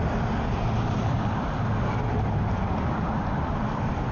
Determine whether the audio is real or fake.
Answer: fake